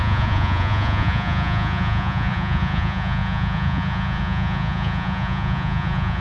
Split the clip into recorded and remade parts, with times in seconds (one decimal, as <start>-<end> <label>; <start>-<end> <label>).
0.0-6.2 remade